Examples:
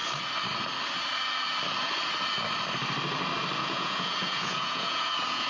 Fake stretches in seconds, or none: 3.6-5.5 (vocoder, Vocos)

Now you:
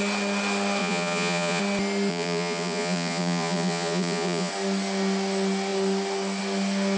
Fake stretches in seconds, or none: 0.8-1.6 (vocoder, Vocos); 2.1-4.5